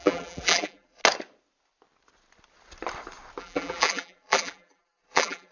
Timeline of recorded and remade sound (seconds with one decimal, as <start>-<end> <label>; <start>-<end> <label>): 0.0-1.0 remade; 1.0-3.4 recorded; 3.4-5.5 remade